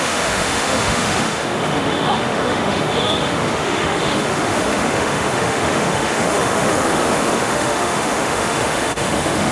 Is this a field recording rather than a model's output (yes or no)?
no